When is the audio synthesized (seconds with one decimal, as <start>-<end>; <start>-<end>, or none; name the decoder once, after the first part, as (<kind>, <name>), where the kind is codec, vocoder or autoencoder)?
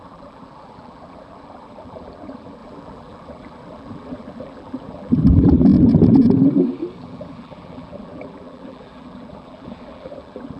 0.0-5.7 (vocoder, BigVGAN v2); 7.0-10.6